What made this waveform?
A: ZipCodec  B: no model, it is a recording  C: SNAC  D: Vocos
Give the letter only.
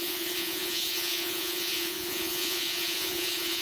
D